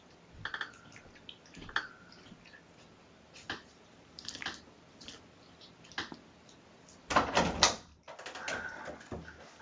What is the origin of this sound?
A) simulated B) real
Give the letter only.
B